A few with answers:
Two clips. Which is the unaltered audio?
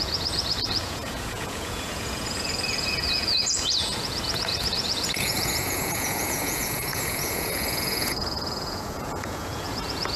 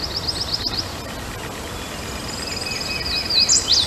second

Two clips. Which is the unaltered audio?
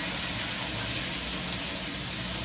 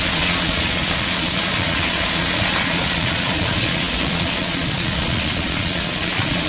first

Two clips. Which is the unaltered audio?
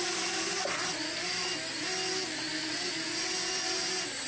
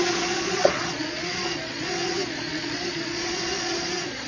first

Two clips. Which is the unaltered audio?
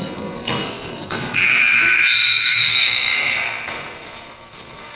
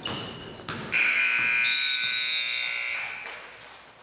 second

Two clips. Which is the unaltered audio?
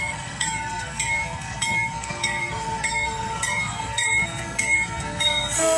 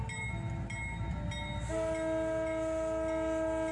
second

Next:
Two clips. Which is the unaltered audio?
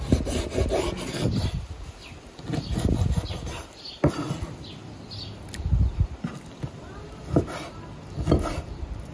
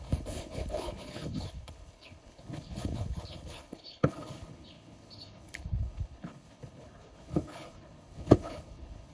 first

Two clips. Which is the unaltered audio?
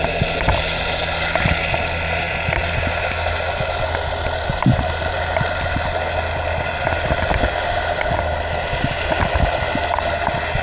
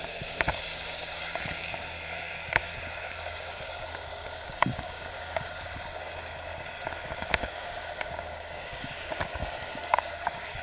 first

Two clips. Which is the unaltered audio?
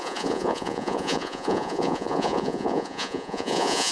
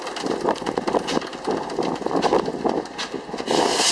second